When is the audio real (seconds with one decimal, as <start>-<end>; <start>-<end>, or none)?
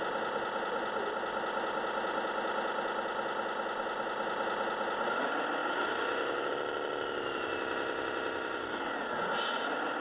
0.0-10.0